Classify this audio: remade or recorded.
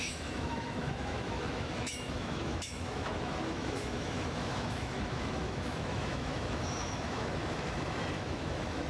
remade